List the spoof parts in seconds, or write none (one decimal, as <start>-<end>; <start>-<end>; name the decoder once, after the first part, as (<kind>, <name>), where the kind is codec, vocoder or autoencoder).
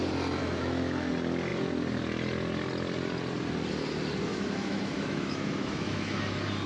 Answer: 0.4-1.1 (autoencoder, DAC-VAE); 4.3-6.2